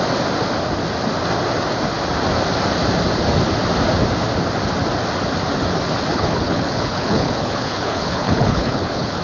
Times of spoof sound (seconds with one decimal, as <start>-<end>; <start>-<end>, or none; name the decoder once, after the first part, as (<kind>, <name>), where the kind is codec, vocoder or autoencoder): 6.1-9.2 (codec, HILCodec)